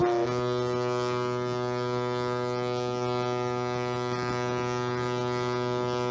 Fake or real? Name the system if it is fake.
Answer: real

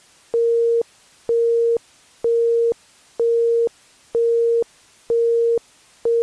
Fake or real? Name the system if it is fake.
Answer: real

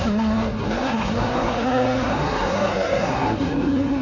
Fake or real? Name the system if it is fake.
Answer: fake, codec, SNAC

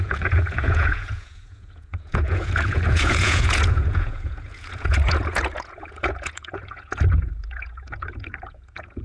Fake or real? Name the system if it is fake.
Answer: fake, vocoder, Vocos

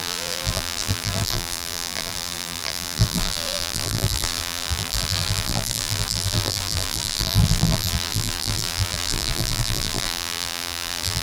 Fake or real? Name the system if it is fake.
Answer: fake, vocoder, BigVGAN v2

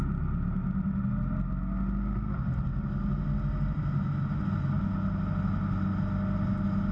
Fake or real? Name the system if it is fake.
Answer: real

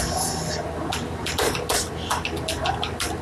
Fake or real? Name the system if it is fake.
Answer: real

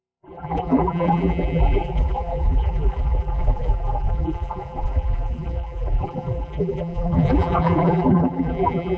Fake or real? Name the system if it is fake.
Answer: fake, vocoder, BigVGAN v2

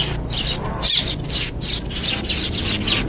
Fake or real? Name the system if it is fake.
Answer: real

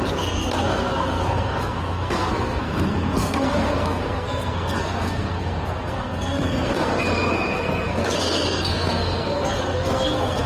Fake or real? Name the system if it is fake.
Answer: fake, codec, SNAC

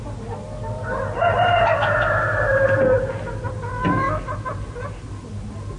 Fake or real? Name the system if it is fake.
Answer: real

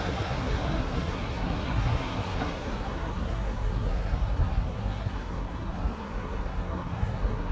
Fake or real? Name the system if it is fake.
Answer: fake, codec, SNAC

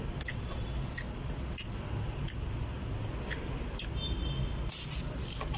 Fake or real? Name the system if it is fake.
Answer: real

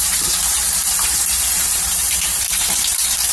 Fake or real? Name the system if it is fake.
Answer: fake, vocoder, BigVGAN v2